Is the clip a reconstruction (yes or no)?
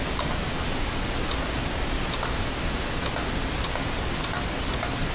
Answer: no